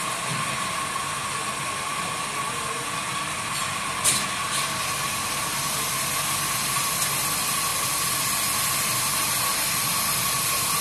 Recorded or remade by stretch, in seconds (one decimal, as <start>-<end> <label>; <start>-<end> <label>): 0.0-10.8 recorded